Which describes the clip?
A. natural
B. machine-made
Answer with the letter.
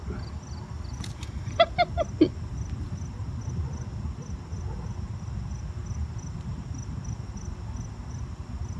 A